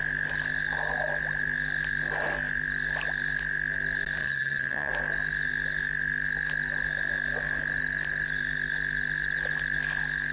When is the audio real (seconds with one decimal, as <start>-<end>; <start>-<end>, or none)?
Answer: 0.0-4.2; 4.9-10.3